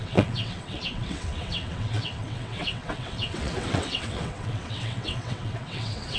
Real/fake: fake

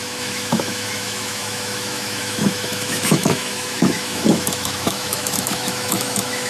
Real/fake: fake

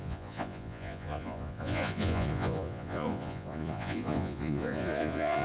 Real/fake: fake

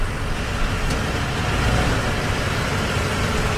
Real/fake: real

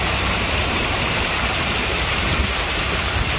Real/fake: fake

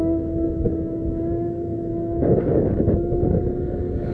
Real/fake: fake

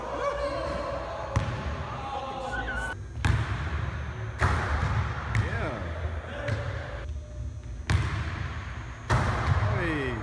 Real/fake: real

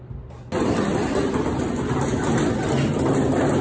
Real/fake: real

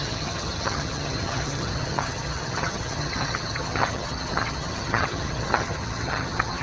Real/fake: fake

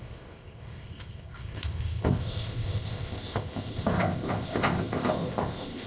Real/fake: fake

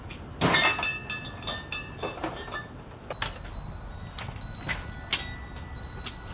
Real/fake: real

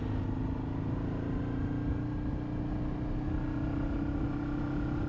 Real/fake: real